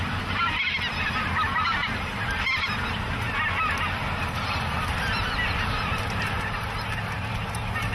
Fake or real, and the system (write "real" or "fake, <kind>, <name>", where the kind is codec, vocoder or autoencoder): real